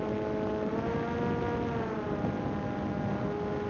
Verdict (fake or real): real